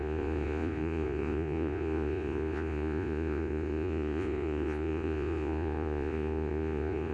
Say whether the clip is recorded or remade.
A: remade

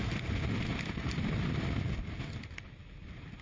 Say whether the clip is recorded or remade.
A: recorded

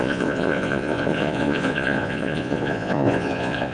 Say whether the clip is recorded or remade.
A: remade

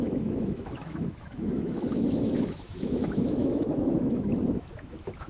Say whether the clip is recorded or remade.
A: remade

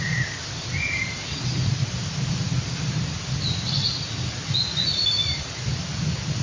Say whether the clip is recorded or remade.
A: recorded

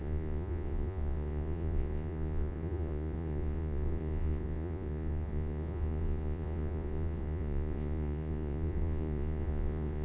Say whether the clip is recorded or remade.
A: remade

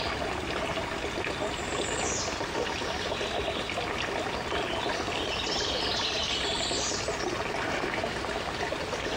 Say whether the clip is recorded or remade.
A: recorded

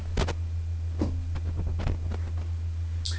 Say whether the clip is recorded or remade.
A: recorded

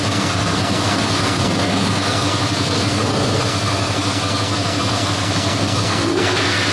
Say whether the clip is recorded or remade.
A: remade